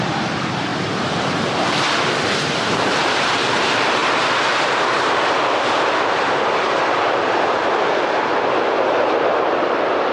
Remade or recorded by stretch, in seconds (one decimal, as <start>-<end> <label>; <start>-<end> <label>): 0.0-10.1 remade